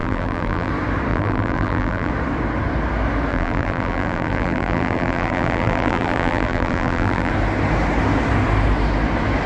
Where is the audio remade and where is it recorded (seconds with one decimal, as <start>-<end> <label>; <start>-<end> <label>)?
0.0-0.7 remade; 0.7-1.1 recorded; 1.1-2.1 remade; 2.1-3.3 recorded; 3.3-7.3 remade; 7.3-9.5 recorded